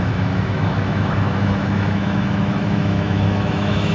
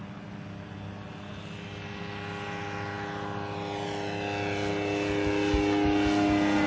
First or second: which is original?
second